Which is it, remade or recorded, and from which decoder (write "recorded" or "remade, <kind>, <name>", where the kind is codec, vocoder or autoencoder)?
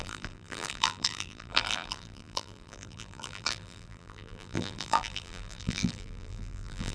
remade, vocoder, BigVGAN v2